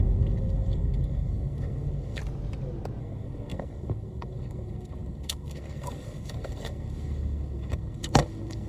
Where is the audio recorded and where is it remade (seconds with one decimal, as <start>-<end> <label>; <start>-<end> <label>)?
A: 0.0-2.2 remade; 2.2-3.0 recorded; 3.0-8.7 remade